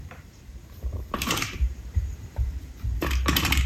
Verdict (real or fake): fake